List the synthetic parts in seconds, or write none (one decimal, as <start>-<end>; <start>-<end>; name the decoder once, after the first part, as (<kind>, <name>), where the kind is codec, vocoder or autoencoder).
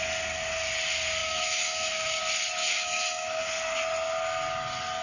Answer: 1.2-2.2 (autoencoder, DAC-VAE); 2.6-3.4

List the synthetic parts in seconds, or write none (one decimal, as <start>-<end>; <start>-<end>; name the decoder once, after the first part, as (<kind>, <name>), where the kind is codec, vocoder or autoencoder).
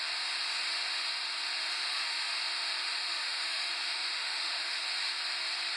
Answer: 1.7-2.4 (autoencoder, DAC-VAE); 2.9-4.8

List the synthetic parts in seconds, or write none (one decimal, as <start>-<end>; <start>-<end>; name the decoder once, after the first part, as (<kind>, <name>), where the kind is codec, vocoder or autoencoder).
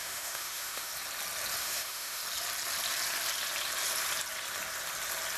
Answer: 0.0-0.9 (autoencoder, DAC-VAE); 1.6-2.2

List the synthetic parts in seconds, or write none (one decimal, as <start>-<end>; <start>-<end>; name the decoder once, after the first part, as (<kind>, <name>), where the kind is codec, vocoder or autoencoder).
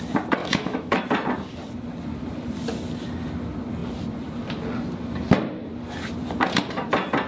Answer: 0.4-1.0 (autoencoder, DAC-VAE)